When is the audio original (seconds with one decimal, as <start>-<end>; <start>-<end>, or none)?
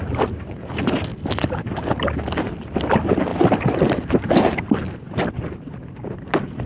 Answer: 0.0-6.7